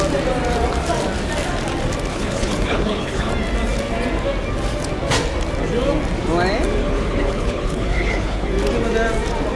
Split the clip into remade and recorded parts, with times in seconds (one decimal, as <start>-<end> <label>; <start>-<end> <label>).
0.0-2.1 recorded; 2.1-3.3 remade; 3.3-6.8 recorded; 6.8-8.5 remade; 8.5-9.6 recorded